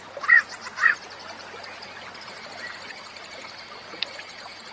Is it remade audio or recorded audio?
recorded